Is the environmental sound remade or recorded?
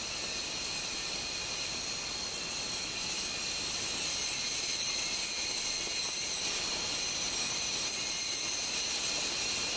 recorded